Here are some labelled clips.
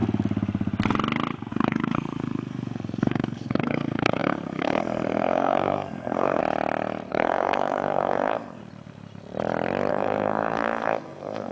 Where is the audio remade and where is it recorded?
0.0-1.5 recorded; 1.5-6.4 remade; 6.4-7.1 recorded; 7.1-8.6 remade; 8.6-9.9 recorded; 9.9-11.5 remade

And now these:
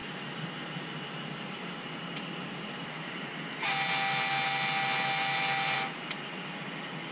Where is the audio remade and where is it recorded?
0.0-7.1 recorded

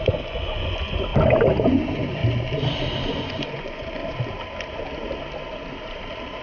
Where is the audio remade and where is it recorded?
0.0-1.1 remade; 1.1-1.7 recorded; 1.7-2.2 remade; 2.2-3.1 recorded; 3.1-4.0 remade; 4.0-6.4 recorded

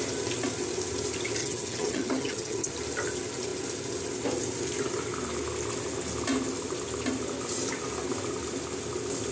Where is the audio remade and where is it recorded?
0.0-1.4 recorded; 1.4-2.7 remade; 2.7-9.3 recorded

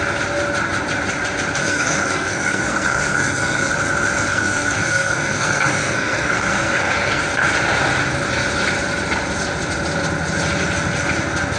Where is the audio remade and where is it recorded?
0.0-1.6 recorded; 1.6-3.7 remade; 3.7-4.3 recorded; 4.3-7.2 remade; 7.2-11.6 recorded

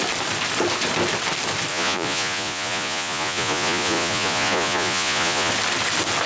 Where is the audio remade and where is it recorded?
0.0-1.7 recorded; 1.7-5.5 remade; 5.5-6.3 recorded